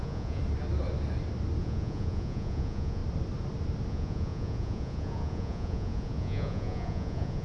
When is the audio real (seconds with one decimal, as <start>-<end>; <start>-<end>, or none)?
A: 0.4-1.6; 3.0-3.9